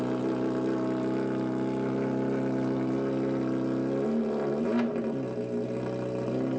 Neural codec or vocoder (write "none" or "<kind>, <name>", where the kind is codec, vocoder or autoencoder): none